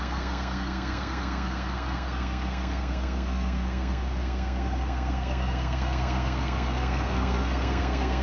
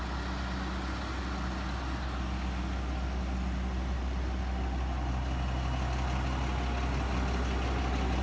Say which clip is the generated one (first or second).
first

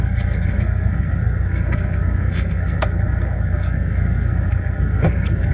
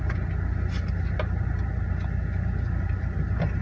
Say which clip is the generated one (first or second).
first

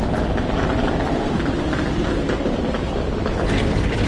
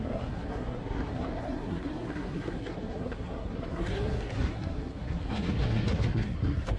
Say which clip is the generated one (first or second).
second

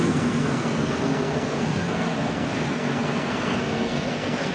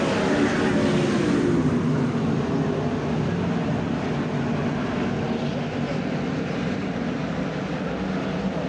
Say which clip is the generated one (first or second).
first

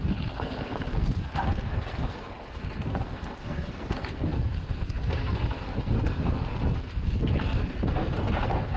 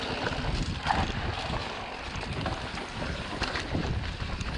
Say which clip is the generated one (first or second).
first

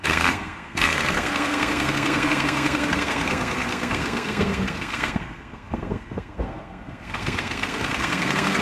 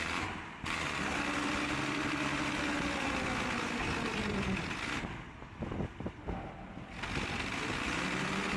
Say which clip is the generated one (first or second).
first